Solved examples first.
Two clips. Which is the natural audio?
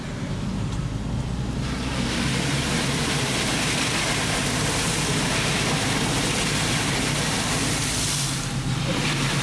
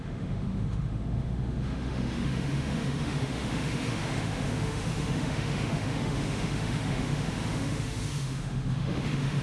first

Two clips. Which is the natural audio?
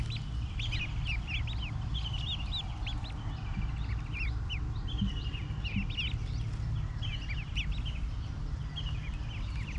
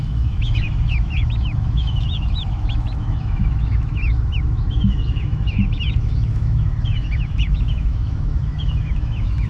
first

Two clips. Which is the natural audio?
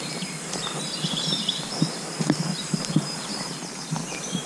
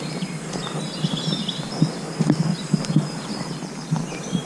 second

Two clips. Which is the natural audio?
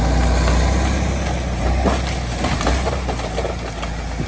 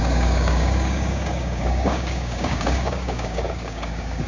first